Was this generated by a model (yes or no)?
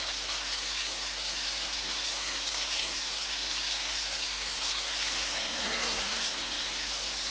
yes